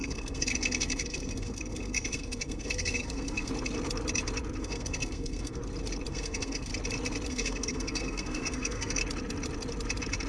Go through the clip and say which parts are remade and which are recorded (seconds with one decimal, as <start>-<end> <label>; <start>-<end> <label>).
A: 0.0-3.5 remade; 3.5-4.6 recorded; 4.6-5.6 remade; 5.6-6.1 recorded; 6.1-6.7 remade; 6.7-7.3 recorded; 7.3-9.0 remade; 9.0-10.3 recorded